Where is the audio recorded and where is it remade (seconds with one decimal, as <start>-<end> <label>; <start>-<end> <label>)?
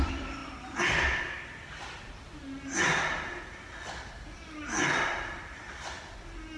0.0-6.6 recorded